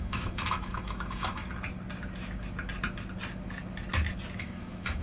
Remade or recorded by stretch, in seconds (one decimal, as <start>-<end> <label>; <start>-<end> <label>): 0.0-1.4 remade; 1.4-4.4 recorded; 4.4-5.0 remade